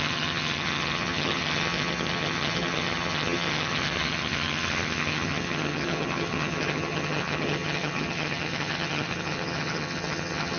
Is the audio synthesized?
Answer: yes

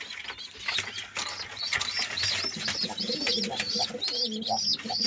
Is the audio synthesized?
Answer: no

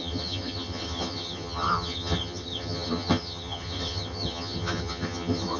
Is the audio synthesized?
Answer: yes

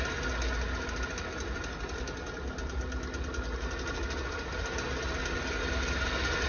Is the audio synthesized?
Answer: no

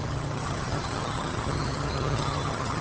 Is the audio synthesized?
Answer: yes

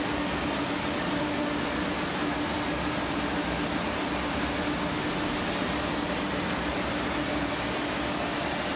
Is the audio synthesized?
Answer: no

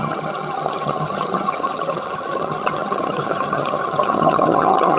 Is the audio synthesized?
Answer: yes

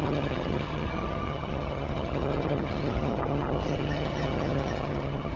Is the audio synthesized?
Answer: yes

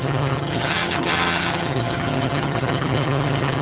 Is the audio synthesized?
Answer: yes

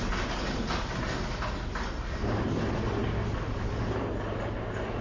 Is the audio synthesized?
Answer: no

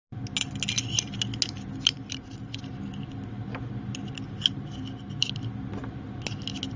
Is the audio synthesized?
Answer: no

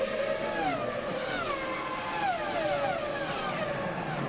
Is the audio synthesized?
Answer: no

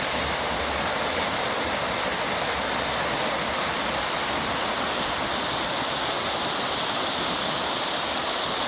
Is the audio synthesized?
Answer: no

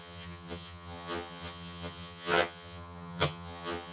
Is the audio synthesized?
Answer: yes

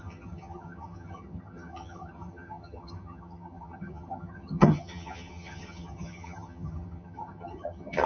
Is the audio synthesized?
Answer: yes